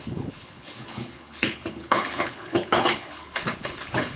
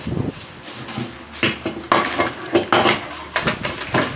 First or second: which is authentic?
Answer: second